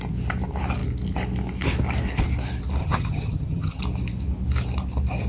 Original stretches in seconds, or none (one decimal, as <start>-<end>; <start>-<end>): 0.0-2.8; 3.8-5.3